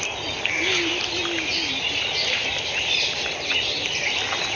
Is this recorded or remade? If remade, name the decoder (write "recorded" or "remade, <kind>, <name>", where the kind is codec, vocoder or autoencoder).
recorded